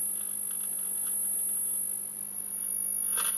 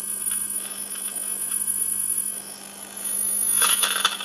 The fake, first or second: second